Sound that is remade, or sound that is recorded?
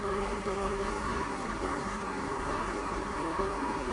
remade